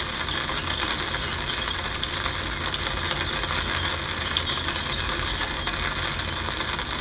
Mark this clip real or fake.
real